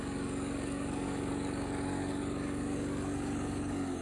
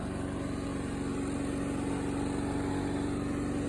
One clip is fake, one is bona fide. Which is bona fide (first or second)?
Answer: second